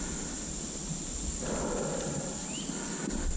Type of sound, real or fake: real